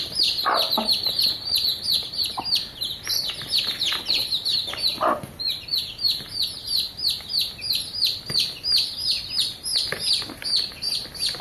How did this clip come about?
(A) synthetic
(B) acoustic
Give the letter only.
B